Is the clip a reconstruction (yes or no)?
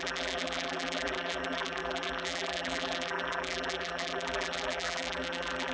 yes